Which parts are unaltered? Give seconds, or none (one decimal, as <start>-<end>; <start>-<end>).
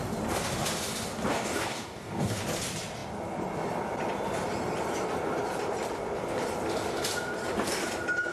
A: 0.0-1.3; 2.4-8.3